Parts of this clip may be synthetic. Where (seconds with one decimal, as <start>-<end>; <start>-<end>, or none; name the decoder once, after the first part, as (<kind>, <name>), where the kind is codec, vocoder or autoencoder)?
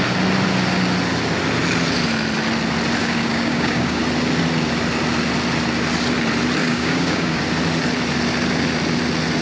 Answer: 3.0-4.0 (codec, DAC); 6.6-7.4